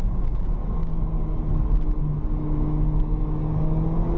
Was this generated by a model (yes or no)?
no